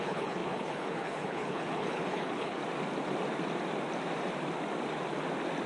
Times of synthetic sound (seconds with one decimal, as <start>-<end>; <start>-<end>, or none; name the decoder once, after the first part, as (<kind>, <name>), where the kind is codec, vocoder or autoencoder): 0.0-2.6 (codec, HILCodec)